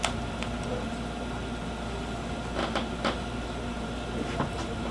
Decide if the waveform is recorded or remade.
recorded